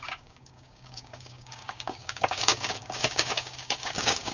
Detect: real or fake fake